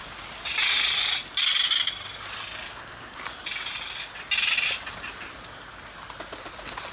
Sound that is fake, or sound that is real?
real